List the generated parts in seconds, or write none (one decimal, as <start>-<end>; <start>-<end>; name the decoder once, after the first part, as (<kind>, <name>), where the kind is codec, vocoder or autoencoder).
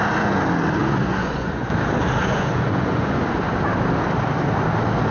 0.8-1.7 (vocoder, Vocos); 2.2-3.2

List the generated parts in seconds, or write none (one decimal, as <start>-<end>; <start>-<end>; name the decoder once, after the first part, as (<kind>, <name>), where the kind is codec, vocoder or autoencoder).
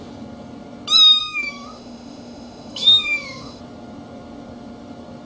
1.2-3.6 (autoencoder, DAC-VAE)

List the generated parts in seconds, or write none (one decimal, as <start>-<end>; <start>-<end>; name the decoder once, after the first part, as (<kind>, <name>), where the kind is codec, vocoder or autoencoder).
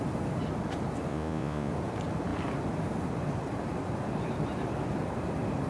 1.1-1.7 (vocoder, Vocos)